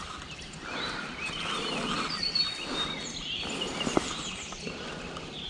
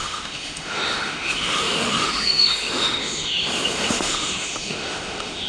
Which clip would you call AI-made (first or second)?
second